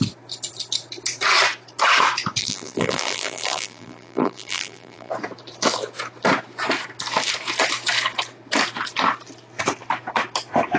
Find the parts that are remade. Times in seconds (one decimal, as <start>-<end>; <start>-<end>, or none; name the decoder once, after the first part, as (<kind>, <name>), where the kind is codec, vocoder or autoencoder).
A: 2.4-5.1 (vocoder, BigVGAN v2)